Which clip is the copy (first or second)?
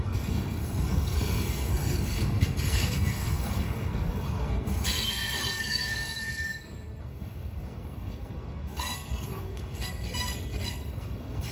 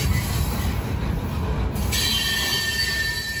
first